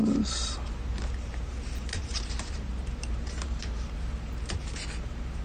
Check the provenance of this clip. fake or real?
fake